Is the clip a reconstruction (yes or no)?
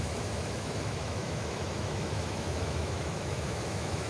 yes